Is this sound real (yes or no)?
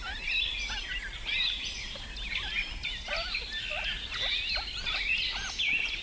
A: yes